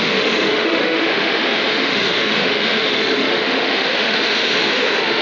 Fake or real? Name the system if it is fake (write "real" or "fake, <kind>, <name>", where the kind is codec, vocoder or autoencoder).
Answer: fake, autoencoder, DAC-VAE